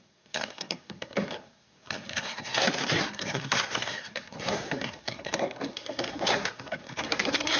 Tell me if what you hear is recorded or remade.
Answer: remade